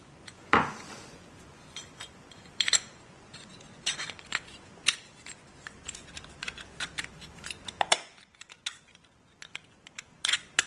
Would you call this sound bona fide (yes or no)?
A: no